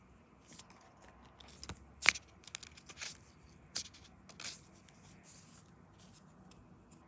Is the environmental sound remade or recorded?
recorded